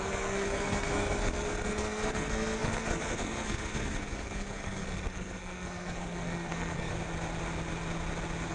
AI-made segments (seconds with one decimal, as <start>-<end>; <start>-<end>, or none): 0.0-6.9